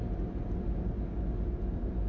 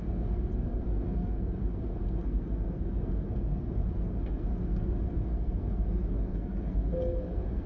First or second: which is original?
first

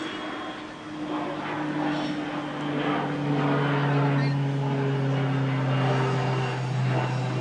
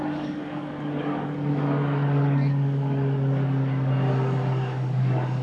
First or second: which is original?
first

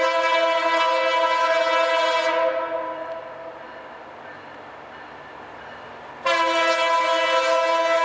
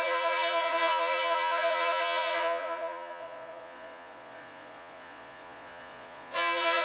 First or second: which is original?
first